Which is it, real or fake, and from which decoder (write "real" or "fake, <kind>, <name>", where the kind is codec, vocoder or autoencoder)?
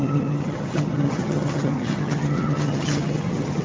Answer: fake, vocoder, HiFi-GAN